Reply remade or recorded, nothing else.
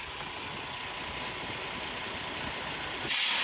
recorded